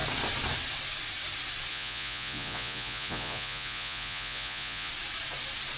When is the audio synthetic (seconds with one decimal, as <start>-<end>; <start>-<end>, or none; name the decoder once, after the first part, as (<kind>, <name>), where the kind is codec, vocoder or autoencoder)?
1.7-4.9 (vocoder, Vocos)